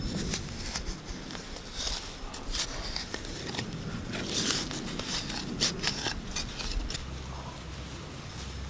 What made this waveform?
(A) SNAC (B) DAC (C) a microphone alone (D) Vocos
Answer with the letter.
C